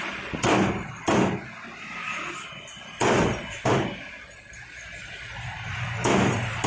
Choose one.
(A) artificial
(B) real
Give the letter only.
B